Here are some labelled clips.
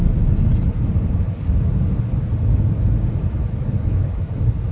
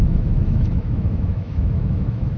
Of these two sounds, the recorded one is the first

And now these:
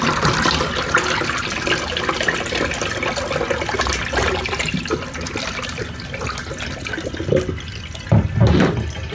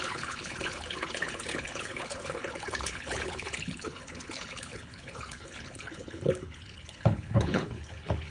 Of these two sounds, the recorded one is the first